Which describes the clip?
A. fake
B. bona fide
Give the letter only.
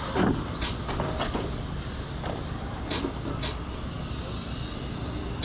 B